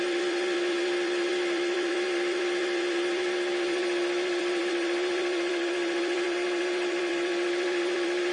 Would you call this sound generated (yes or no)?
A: yes